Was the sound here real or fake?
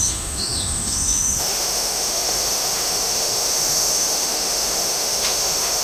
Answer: fake